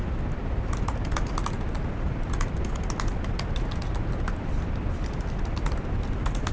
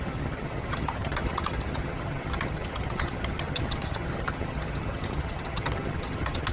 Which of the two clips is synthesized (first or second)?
second